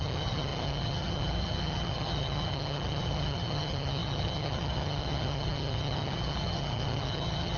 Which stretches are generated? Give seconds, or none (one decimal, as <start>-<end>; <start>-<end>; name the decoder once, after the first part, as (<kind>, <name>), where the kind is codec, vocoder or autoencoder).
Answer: 0.0-7.6 (vocoder, HiFi-GAN)